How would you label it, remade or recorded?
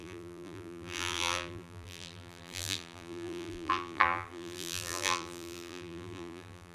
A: remade